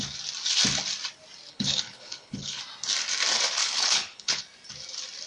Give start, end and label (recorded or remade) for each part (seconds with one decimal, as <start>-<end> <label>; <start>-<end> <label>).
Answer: 0.0-1.5 recorded; 1.5-2.6 remade; 2.6-3.6 recorded; 3.6-4.4 remade; 4.4-5.3 recorded